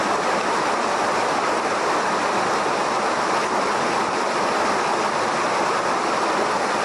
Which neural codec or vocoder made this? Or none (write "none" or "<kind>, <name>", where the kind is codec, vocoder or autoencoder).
none